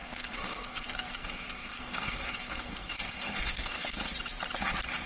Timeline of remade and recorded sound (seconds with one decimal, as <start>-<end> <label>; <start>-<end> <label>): 0.0-4.0 remade; 4.0-5.1 recorded